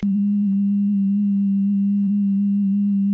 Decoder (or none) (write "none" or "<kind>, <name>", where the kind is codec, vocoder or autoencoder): vocoder, BigVGAN v2